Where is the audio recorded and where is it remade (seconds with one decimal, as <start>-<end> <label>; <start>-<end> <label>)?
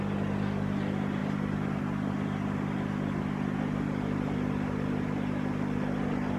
0.0-6.4 recorded